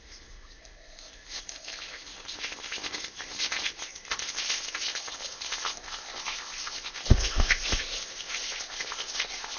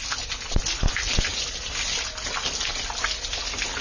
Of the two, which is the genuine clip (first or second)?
second